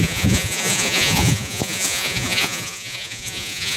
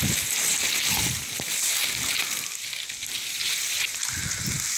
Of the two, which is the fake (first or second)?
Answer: first